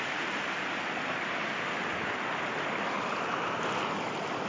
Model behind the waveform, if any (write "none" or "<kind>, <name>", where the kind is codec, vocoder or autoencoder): none